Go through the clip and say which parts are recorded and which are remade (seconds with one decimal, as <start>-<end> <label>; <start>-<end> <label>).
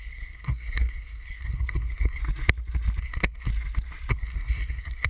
0.0-2.2 remade; 2.2-3.0 recorded; 3.0-3.5 remade; 3.5-4.1 recorded; 4.1-5.1 remade